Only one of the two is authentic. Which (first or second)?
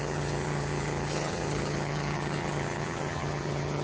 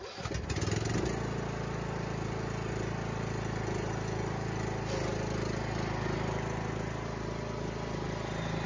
second